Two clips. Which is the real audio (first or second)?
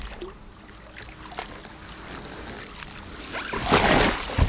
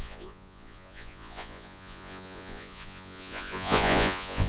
first